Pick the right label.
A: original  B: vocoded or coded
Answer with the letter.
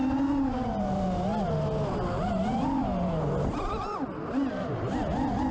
A